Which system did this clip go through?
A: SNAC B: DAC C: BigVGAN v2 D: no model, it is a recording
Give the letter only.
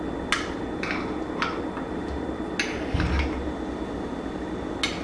D